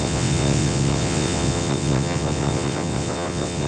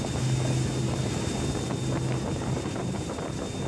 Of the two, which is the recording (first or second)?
second